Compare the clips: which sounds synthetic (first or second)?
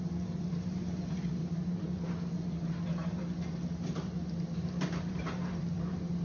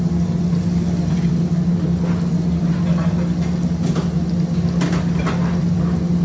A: first